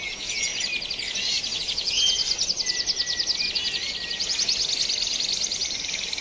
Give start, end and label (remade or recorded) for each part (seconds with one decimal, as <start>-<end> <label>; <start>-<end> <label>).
0.0-0.5 remade; 0.5-1.6 recorded; 1.6-2.2 remade; 2.2-6.2 recorded